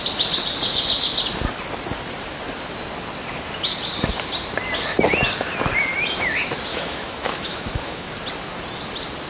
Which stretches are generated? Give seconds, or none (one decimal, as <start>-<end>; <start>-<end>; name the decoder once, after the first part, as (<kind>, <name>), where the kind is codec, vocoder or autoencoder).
6.7-8.1 (autoencoder, DAC-VAE)